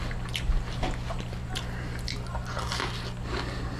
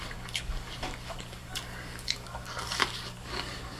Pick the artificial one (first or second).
second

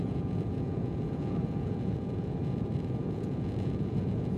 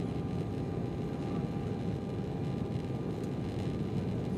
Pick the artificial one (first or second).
first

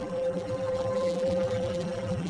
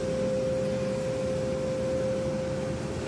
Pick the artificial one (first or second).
first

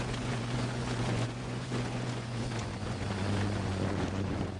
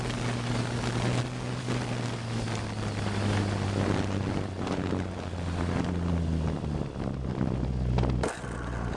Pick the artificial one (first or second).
first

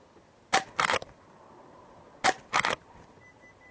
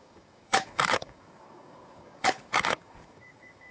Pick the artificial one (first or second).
second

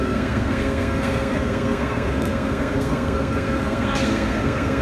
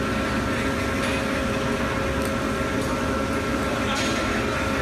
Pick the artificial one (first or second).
first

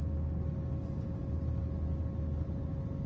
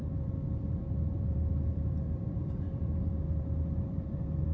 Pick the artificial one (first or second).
second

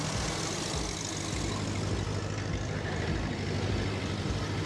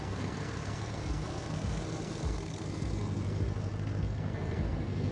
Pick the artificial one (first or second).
second